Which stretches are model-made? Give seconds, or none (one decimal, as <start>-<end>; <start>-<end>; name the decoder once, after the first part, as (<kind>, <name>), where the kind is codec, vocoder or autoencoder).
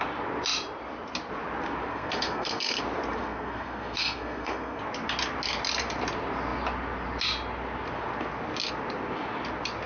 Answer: 1.9-2.8 (codec, SNAC); 3.2-4.8